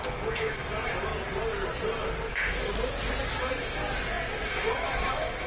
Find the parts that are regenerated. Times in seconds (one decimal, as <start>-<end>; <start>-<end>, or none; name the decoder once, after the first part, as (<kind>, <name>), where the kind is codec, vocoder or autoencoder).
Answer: 0.0-1.1 (autoencoder, DAC-VAE); 2.3-2.7; 3.4-3.8; 4.5-5.5